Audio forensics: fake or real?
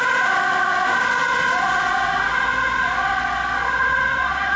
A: real